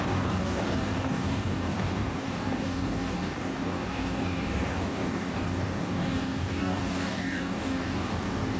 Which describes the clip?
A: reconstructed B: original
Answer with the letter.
A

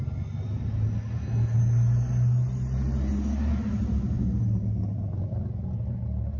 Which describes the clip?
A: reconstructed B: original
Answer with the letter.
B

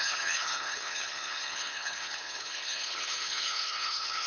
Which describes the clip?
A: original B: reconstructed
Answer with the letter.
B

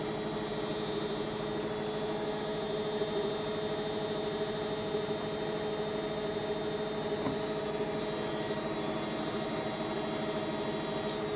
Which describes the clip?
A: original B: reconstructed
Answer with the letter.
A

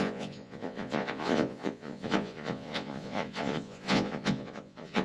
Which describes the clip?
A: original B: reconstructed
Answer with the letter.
B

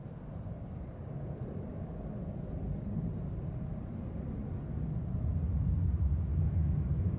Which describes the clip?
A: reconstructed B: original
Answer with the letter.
B